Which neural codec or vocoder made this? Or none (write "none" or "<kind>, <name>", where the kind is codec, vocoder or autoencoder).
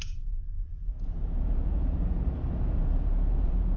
vocoder, Vocos